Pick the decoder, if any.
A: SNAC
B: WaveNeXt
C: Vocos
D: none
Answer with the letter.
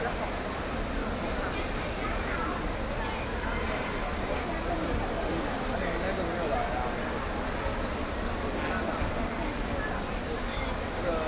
D